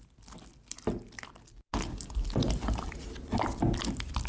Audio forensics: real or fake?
real